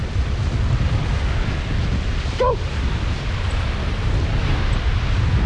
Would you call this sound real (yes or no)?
yes